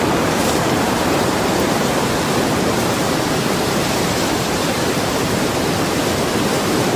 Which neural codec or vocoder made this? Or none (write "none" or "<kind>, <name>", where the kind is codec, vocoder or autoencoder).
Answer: vocoder, BigVGAN v2